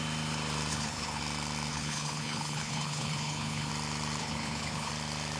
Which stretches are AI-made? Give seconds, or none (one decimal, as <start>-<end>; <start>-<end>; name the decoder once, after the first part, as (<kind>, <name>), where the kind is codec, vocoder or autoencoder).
0.7-1.2 (codec, HILCodec); 1.7-3.7; 4.2-4.9